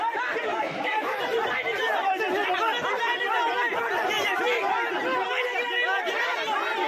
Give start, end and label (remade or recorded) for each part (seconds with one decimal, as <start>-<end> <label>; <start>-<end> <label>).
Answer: 0.0-0.5 recorded; 0.5-1.2 remade; 1.2-6.9 recorded